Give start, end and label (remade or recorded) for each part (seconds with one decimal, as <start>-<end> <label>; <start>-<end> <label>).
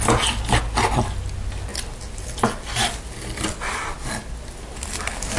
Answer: 0.0-5.4 recorded